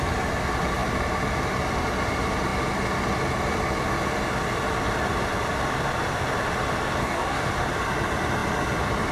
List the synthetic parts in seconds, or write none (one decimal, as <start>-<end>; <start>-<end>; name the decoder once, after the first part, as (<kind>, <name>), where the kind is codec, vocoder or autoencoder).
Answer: 7.0-7.5 (codec, DAC)